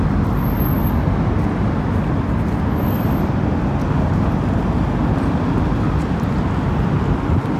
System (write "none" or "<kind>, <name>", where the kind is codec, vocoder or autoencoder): none